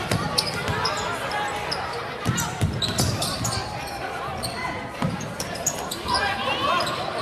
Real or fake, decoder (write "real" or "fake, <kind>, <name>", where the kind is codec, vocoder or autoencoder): fake, vocoder, BigVGAN v2